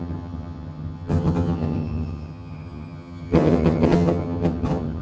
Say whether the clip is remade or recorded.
remade